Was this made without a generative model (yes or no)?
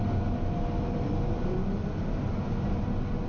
yes